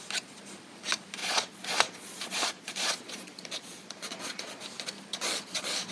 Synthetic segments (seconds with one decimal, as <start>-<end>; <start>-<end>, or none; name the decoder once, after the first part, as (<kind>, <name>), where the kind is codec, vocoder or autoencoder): 1.2-4.6 (vocoder, Vocos); 5.1-5.9